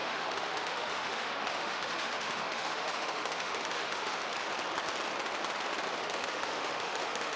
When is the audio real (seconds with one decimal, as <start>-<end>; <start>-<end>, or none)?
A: 4.2-6.0